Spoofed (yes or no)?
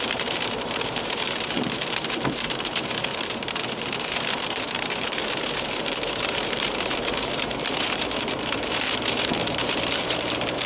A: yes